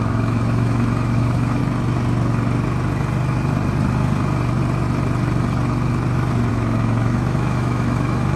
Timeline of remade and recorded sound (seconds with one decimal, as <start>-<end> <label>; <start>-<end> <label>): 0.0-1.6 remade; 1.6-6.5 recorded; 6.5-8.4 remade